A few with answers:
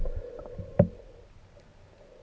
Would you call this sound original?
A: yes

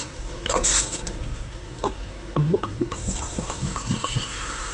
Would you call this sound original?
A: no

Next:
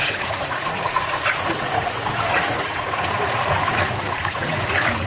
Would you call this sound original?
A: no